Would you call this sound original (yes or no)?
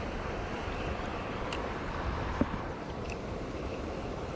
yes